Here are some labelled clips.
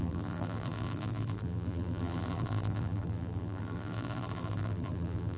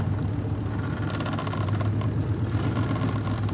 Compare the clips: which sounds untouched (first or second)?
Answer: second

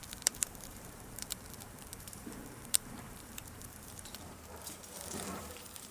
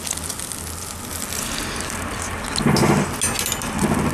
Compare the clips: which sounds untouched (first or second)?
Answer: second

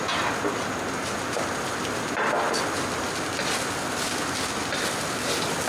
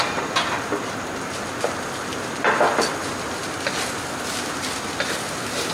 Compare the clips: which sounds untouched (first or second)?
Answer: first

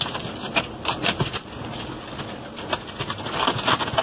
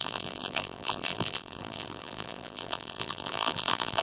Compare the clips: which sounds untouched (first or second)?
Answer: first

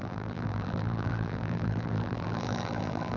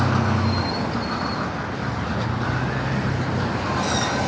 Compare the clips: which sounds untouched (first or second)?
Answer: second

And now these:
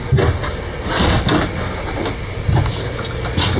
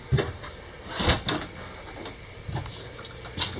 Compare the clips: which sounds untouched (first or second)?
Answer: first